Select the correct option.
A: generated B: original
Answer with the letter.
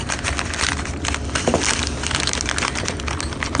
B